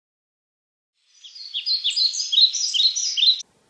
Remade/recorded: recorded